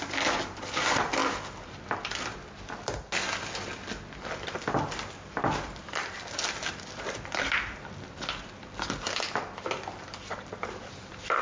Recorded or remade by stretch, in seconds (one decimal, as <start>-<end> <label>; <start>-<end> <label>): 0.0-11.4 recorded